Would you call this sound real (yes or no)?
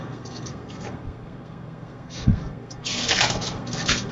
no